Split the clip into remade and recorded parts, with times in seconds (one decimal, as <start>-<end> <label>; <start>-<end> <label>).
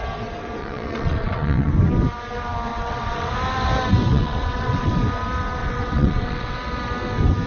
0.0-0.6 recorded; 0.6-1.7 remade; 1.7-2.7 recorded; 2.7-3.3 remade; 3.3-4.1 recorded; 4.1-4.9 remade; 4.9-5.6 recorded; 5.6-6.7 remade; 6.7-7.5 recorded